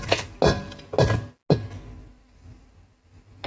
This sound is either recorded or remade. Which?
recorded